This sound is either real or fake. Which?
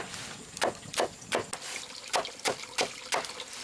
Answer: real